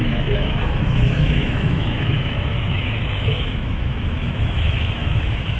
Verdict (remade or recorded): remade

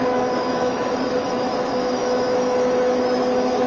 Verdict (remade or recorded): remade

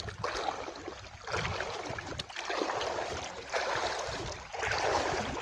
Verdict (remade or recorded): recorded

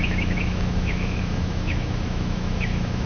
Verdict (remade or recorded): remade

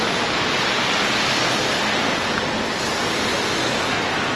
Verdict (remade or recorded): recorded